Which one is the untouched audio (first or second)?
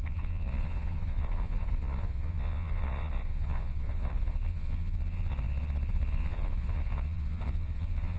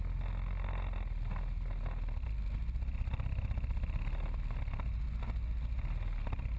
second